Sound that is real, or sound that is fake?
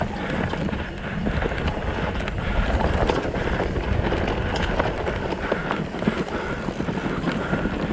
real